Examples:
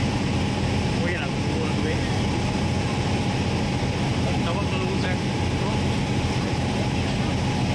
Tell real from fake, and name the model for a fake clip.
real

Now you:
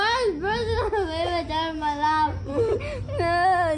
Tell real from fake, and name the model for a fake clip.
real